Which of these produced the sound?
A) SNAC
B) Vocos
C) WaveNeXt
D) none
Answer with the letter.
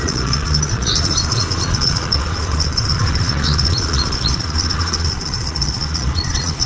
B